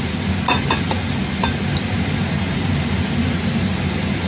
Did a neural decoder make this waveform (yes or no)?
no